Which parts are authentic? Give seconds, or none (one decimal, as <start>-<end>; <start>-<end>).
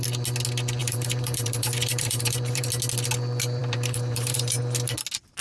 0.0-0.8; 2.7-3.6; 4.6-5.4